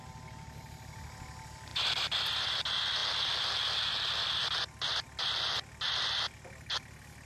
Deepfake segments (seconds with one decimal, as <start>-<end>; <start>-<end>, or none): none